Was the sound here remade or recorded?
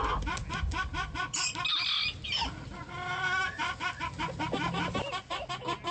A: recorded